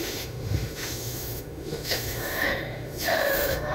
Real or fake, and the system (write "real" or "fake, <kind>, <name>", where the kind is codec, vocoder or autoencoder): fake, autoencoder, DAC-VAE